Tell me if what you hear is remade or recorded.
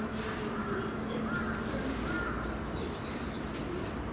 recorded